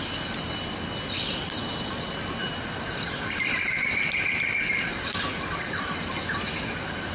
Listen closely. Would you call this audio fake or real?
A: real